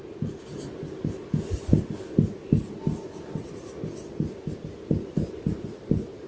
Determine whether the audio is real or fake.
real